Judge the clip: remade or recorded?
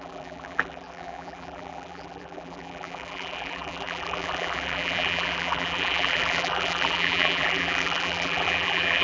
remade